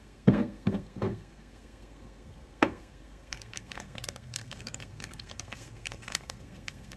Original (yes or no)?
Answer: no